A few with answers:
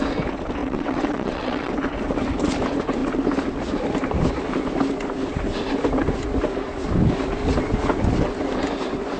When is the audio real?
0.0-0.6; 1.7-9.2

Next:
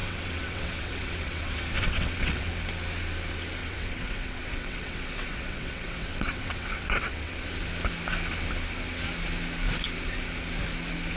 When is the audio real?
2.5-3.6; 7.5-11.2

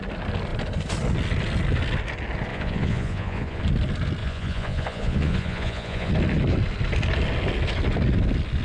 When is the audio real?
0.0-2.5; 3.6-4.2; 6.1-8.6